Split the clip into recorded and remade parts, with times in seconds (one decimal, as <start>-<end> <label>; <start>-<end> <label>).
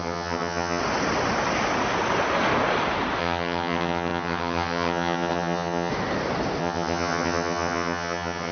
0.0-0.8 remade; 0.8-3.2 recorded; 3.2-5.9 remade; 5.9-6.6 recorded; 6.6-8.5 remade